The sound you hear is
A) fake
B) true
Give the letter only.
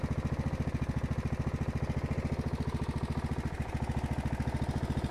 B